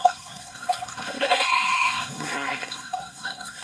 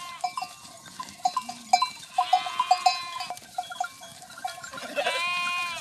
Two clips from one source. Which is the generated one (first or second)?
first